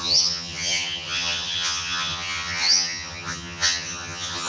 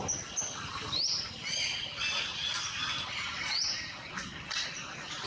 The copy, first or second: first